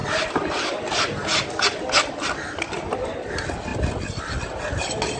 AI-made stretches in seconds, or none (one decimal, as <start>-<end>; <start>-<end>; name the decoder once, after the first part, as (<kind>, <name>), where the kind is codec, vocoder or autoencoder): none